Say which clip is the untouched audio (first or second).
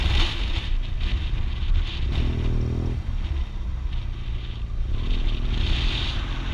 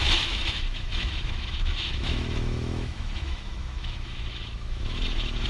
first